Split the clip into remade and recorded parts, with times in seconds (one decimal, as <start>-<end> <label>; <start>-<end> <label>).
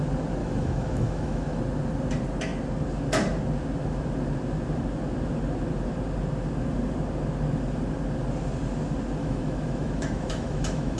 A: 0.0-0.4 recorded; 0.4-1.6 remade; 1.6-9.2 recorded; 9.2-11.0 remade